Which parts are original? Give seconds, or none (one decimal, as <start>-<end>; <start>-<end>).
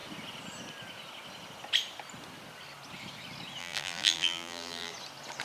0.0-3.6; 4.9-5.4